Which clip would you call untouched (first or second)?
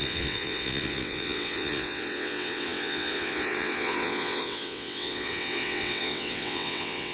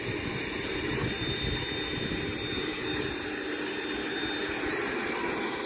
second